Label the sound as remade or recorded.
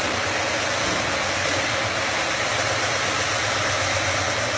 recorded